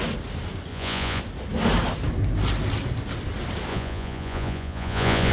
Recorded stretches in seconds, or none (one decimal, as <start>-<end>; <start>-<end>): 0.0-0.7; 1.2-3.7